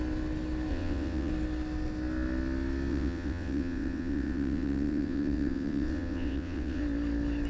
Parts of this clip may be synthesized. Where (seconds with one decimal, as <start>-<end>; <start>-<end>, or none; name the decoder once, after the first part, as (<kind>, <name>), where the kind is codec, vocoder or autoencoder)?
0.7-1.3 (vocoder, WaveNeXt); 2.9-6.8